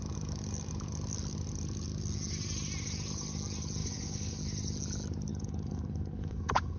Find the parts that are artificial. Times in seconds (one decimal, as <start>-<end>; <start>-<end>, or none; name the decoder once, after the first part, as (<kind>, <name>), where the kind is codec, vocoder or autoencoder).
3.8-4.4 (codec, HILCodec); 5.3-6.8